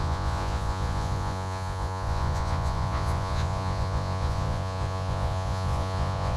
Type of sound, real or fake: fake